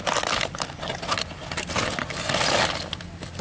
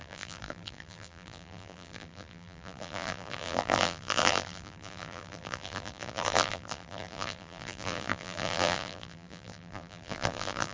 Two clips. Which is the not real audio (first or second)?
second